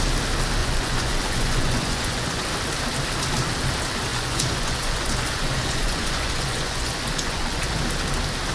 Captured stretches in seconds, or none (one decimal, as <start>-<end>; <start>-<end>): 0.0-0.6; 2.5-4.1; 7.8-8.5